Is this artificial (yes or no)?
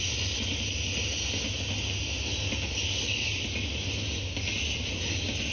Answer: no